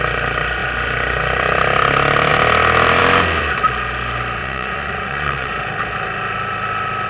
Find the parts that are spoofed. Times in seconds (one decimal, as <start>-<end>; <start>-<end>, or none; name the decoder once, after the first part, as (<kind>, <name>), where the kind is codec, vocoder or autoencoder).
4.4-5.5 (vocoder, Vocos)